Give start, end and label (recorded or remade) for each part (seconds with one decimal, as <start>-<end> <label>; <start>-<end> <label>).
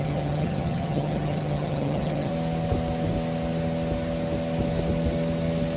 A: 0.0-2.3 remade; 2.3-5.8 recorded